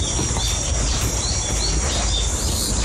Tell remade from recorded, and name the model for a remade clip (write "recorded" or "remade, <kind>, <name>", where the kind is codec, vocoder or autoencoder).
recorded